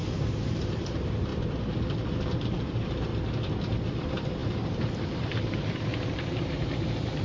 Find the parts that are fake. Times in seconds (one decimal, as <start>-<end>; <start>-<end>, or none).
0.0-3.1; 3.9-7.2

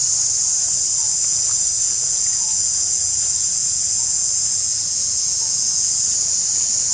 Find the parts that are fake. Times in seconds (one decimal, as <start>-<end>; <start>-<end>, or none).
1.2-6.9

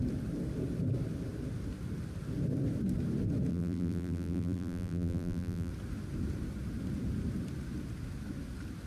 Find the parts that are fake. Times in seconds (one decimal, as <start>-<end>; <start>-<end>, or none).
3.5-5.7